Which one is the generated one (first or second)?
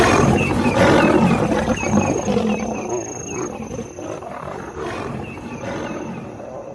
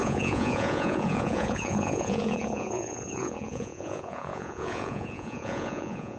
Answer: second